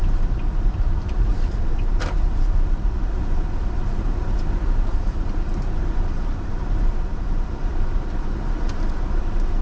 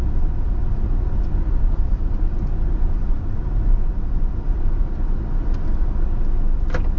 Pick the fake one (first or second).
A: first